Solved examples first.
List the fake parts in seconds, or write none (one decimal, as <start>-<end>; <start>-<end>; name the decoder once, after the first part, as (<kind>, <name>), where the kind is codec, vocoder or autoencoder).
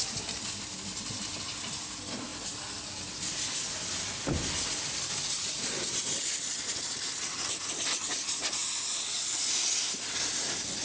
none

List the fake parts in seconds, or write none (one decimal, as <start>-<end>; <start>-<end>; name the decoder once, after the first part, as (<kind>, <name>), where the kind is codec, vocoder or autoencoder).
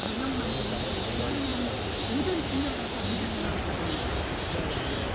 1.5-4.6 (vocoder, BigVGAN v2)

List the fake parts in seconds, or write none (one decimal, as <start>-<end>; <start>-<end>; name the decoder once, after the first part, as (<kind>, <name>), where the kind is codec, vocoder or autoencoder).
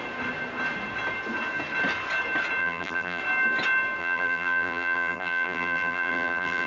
2.6-3.2 (vocoder, BigVGAN v2); 4.0-6.7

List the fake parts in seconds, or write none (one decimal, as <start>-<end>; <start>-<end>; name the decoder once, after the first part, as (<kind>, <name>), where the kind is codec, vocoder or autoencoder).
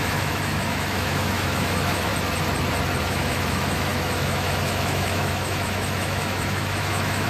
0.0-2.1 (autoencoder, DAC-VAE); 3.0-7.3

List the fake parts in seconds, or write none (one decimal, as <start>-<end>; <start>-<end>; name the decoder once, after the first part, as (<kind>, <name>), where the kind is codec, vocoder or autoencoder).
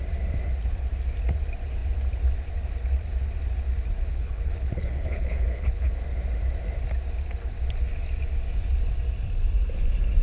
4.1-5.9 (codec, HILCodec)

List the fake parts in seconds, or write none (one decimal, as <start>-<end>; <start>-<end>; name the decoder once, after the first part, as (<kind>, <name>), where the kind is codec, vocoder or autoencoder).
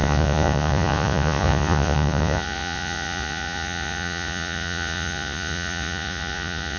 0.0-6.8 (vocoder, Vocos)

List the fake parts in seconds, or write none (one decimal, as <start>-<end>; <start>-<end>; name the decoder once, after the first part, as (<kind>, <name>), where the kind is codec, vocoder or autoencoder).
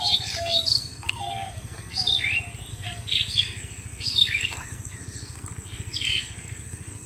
0.0-2.1 (codec, SNAC); 2.7-7.1